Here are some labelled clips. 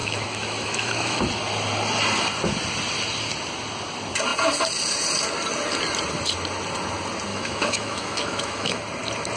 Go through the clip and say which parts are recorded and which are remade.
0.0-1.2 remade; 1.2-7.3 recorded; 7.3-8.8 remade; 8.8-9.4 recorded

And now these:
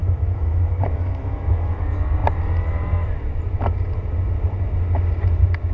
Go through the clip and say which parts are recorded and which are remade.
0.0-1.8 remade; 1.8-5.7 recorded

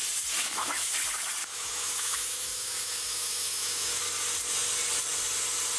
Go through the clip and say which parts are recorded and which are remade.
0.0-0.4 recorded; 0.4-0.9 remade; 0.9-1.4 recorded; 1.4-4.0 remade; 4.0-5.8 recorded

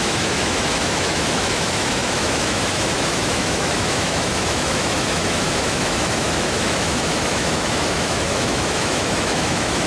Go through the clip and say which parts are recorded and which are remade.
0.0-9.9 remade

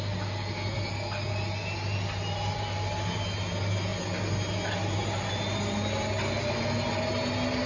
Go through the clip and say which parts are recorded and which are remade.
0.0-7.7 recorded

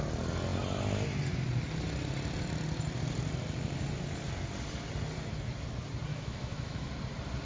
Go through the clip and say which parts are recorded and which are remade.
0.0-6.1 recorded; 6.1-6.9 remade; 6.9-7.5 recorded

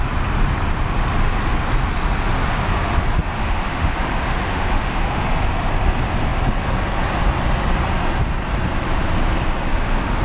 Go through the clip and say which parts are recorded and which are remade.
0.0-3.4 recorded; 3.4-5.2 remade; 5.2-9.7 recorded; 9.7-10.2 remade

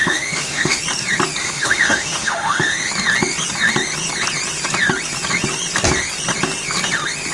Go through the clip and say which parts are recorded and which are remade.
0.0-0.8 remade; 0.8-1.4 recorded; 1.4-2.9 remade; 2.9-7.3 recorded